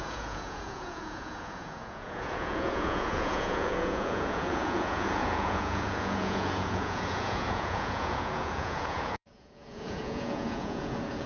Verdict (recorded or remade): remade